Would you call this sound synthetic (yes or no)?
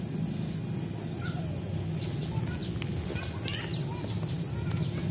no